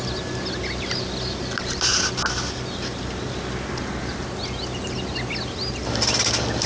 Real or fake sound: real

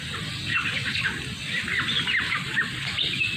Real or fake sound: real